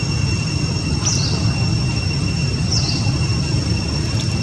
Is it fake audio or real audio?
real